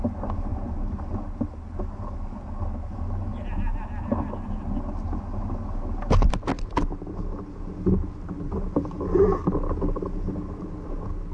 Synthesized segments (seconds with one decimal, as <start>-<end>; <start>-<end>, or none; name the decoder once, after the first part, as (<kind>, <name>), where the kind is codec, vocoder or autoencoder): none